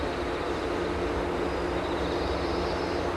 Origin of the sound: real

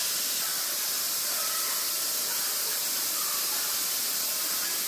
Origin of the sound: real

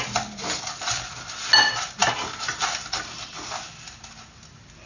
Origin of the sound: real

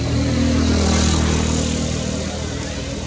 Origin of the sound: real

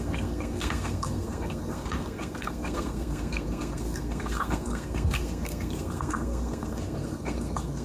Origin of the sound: fake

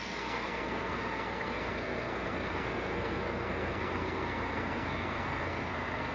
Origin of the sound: fake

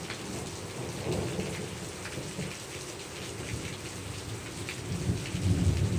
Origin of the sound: real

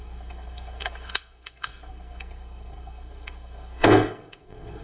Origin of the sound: fake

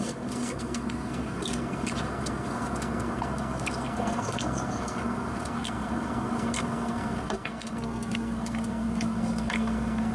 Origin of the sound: fake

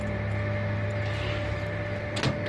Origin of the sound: real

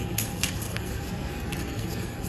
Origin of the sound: fake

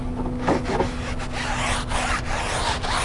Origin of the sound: real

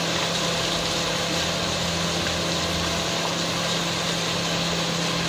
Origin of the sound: real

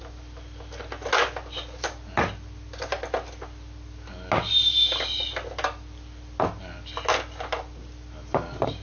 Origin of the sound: real